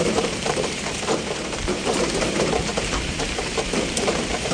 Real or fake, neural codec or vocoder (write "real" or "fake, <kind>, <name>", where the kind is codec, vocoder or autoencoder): fake, vocoder, BigVGAN v2